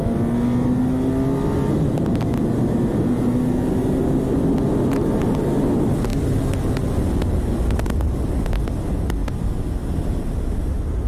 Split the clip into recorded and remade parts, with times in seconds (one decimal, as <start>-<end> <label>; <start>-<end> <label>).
0.0-11.1 recorded

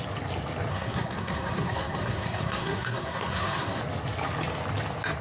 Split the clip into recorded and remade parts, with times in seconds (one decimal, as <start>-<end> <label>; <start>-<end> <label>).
0.0-0.7 recorded; 0.7-3.8 remade; 3.8-5.2 recorded

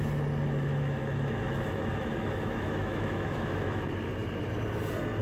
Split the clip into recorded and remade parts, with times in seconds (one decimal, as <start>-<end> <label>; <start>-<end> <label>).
0.0-0.7 recorded; 0.7-3.8 remade; 3.8-5.2 recorded